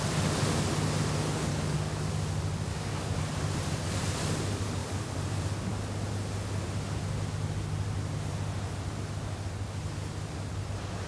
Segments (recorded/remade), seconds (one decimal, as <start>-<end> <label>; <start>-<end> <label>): 0.0-1.5 recorded; 1.5-2.1 remade; 2.1-2.7 recorded; 2.7-3.2 remade; 3.2-4.8 recorded; 4.8-5.3 remade; 5.3-11.1 recorded